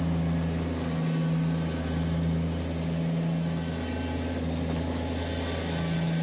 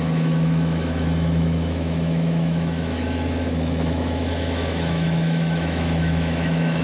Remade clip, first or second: second